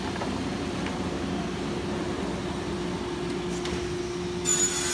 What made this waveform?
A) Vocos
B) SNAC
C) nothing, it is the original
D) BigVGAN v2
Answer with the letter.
C